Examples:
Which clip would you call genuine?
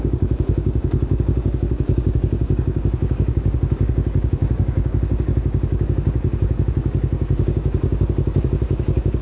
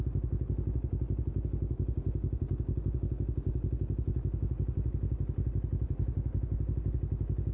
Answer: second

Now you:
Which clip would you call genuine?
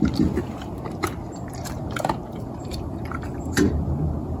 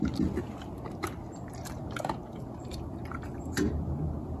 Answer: second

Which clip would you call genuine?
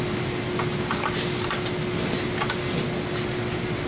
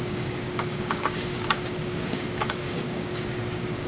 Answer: first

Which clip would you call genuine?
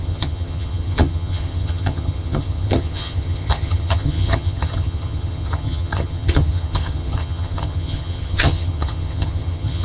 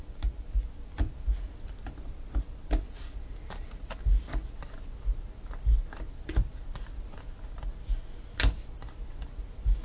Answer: second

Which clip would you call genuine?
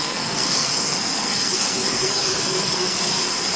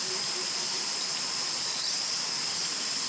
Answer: second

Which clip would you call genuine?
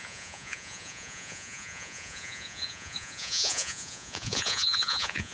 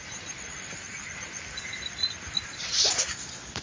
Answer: second